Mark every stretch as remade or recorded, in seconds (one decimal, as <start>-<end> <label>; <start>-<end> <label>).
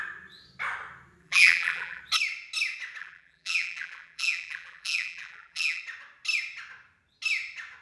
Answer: 0.0-1.2 recorded; 1.2-2.0 remade; 2.0-3.0 recorded; 3.0-5.8 remade; 5.8-7.8 recorded